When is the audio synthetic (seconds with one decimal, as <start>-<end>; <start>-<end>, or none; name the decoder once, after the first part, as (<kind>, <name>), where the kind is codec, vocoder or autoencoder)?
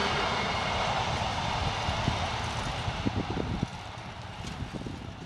3.7-4.2 (vocoder, BigVGAN v2)